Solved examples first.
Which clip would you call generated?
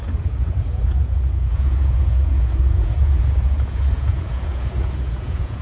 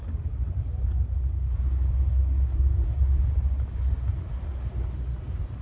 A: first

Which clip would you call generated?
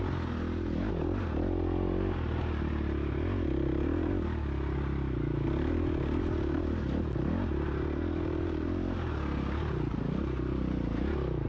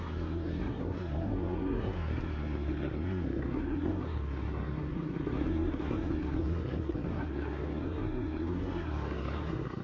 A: second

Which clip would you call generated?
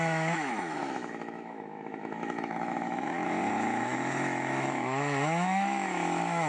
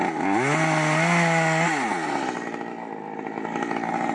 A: first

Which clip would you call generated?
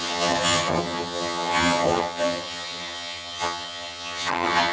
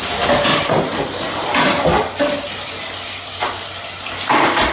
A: first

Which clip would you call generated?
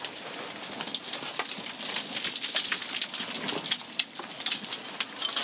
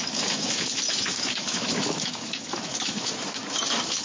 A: second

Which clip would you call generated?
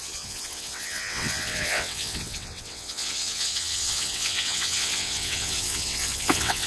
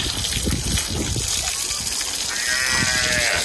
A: first